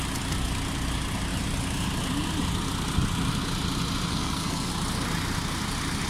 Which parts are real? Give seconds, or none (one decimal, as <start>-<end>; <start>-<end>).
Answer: 0.0-4.1; 4.7-6.1